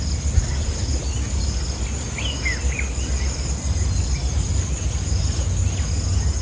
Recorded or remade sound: recorded